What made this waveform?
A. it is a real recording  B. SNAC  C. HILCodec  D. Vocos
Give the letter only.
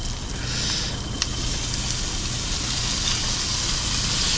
A